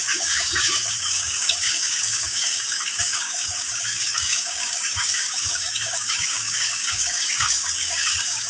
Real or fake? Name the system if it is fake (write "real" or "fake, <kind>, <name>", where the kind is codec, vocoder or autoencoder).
fake, codec, DAC